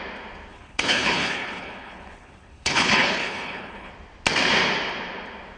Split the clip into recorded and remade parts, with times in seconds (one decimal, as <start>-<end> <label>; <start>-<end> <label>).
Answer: 0.0-0.5 recorded; 0.5-3.9 remade; 3.9-5.6 recorded